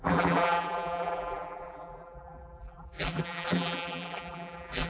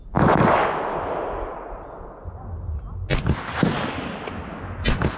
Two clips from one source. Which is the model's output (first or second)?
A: first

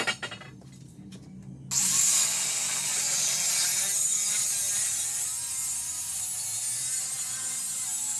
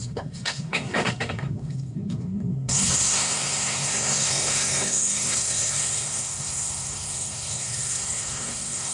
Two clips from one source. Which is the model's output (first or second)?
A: second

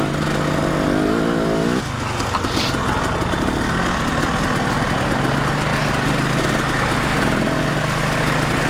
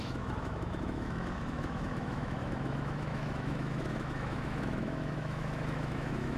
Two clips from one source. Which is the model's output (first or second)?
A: second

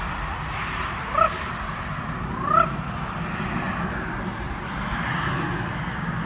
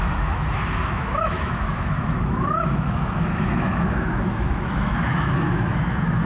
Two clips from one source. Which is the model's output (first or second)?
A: second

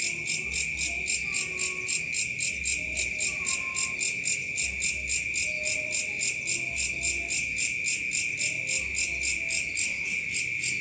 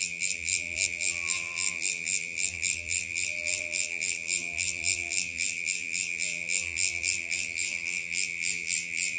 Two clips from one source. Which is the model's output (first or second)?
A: second